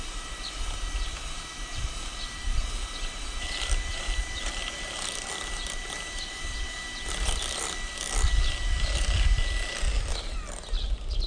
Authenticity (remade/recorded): remade